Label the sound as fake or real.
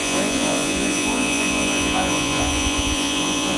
fake